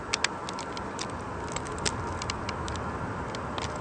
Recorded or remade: recorded